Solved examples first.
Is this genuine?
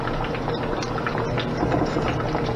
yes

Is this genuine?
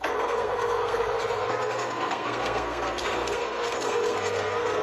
no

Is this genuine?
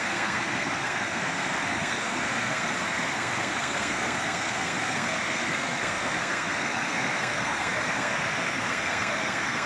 no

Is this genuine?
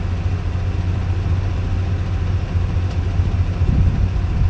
yes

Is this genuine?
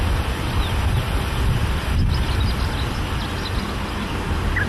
yes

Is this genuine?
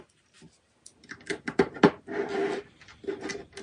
yes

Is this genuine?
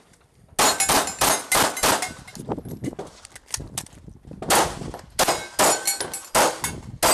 yes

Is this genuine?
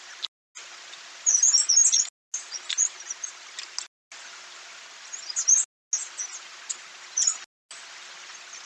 yes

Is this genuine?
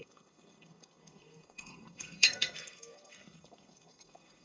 no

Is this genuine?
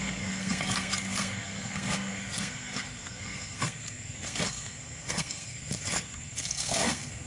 no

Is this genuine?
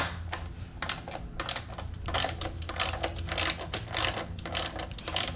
yes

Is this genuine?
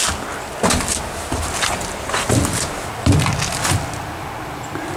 yes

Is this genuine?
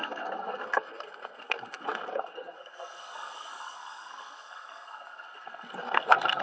no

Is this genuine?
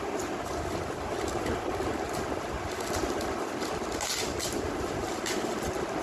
yes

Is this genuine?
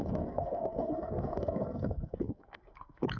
no